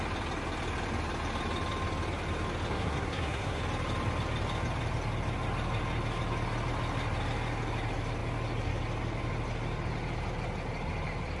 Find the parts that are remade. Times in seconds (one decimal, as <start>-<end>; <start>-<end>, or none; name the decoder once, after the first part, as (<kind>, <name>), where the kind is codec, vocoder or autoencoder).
2.7-3.6 (codec, SNAC)